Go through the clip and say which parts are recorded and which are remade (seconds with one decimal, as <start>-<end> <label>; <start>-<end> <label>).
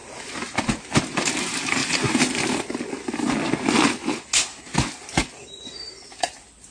0.0-6.7 recorded